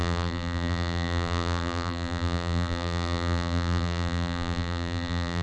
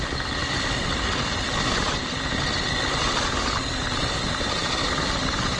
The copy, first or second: first